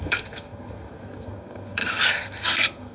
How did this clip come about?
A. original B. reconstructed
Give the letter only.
B